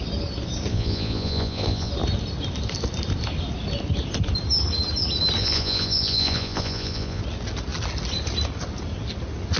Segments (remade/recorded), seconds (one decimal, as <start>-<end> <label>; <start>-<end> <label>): 0.0-0.7 recorded; 0.7-1.9 remade; 1.9-5.4 recorded; 5.4-7.2 remade; 7.2-9.6 recorded